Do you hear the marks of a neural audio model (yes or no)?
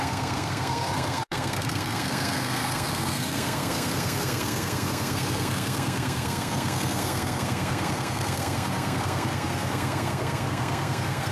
yes